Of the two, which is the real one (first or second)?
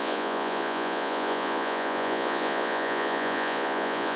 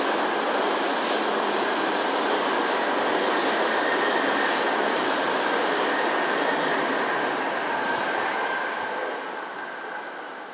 second